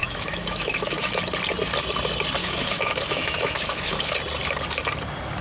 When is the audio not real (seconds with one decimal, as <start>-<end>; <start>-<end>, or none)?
0.0-1.2; 2.4-4.1